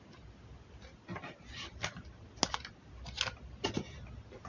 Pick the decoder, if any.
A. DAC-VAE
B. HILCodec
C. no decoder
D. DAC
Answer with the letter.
C